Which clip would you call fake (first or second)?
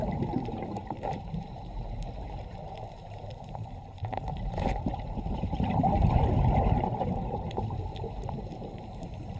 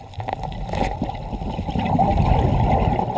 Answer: first